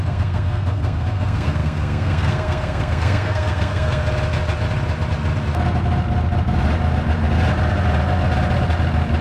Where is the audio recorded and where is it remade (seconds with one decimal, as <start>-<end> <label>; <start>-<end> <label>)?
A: 0.0-4.0 remade; 4.0-9.2 recorded